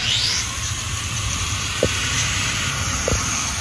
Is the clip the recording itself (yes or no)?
no